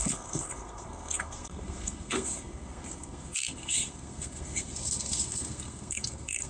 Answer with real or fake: fake